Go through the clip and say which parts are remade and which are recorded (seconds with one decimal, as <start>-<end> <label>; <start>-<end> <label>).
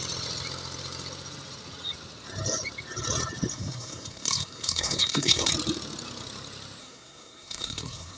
0.0-3.5 recorded; 3.5-5.5 remade; 5.5-6.8 recorded; 6.8-8.2 remade